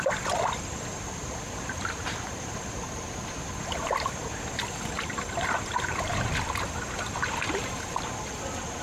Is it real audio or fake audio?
real